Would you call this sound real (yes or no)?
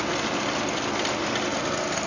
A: yes